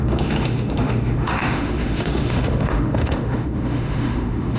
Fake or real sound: fake